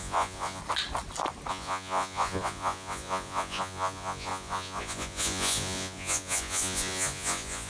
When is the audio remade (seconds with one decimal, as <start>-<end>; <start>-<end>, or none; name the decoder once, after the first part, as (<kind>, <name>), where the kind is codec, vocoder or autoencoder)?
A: 0.0-0.6 (vocoder, Vocos); 1.5-7.7